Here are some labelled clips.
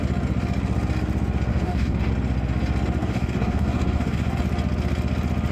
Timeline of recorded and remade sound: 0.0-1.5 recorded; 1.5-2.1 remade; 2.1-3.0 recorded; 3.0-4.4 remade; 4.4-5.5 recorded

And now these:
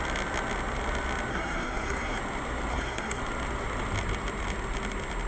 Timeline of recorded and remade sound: 0.0-1.3 recorded; 1.3-2.2 remade; 2.2-2.7 recorded; 2.7-3.2 remade; 3.2-5.3 recorded

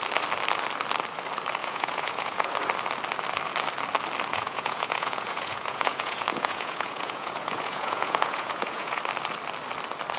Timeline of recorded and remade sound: 0.0-1.6 recorded; 1.6-2.5 remade; 2.5-4.3 recorded; 4.3-9.0 remade; 9.0-10.2 recorded

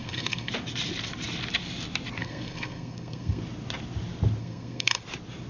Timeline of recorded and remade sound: 0.0-0.5 remade; 0.5-2.2 recorded; 2.2-3.4 remade; 3.4-4.4 recorded; 4.4-5.0 remade; 5.0-5.5 recorded

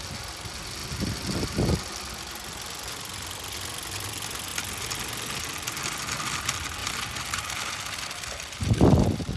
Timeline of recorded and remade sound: 0.0-6.8 recorded; 6.8-9.4 remade

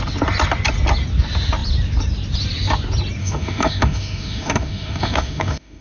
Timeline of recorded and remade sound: 0.0-3.2 recorded; 3.2-5.8 remade